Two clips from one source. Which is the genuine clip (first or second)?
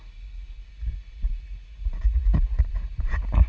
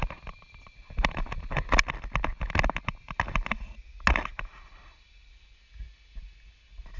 second